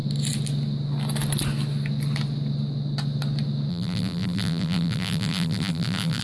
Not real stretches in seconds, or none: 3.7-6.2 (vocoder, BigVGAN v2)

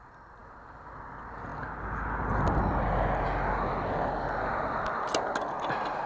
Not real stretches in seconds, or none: 0.4-0.9 (vocoder, BigVGAN v2)

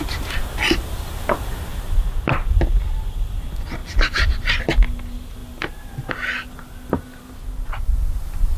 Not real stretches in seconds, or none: none

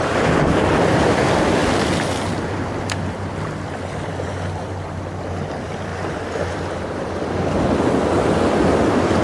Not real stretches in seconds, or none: 0.0-1.6 (vocoder, BigVGAN v2); 5.5-5.9; 8.6-9.2

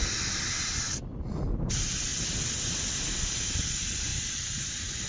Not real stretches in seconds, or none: 4.1-4.6 (vocoder, BigVGAN v2)

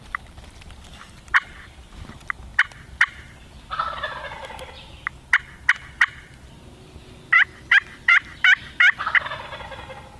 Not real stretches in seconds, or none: none